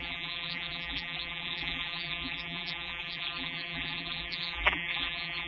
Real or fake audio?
fake